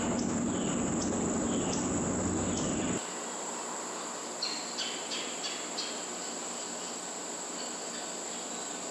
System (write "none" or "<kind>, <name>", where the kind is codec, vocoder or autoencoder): none